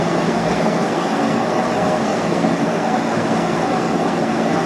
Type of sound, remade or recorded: remade